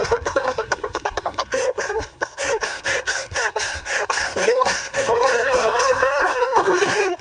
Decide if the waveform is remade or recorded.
remade